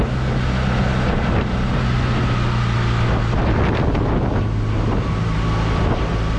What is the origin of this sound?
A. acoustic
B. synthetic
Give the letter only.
A